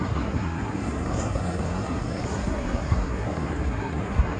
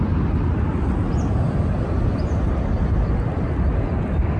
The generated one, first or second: first